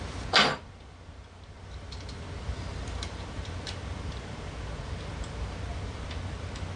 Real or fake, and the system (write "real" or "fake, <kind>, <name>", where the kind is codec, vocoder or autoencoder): fake, vocoder, BigVGAN v2